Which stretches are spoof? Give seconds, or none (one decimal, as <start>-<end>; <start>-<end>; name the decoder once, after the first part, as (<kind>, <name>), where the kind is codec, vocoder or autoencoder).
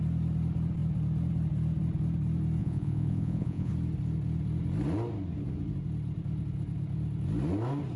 2.6-3.7 (vocoder, Vocos)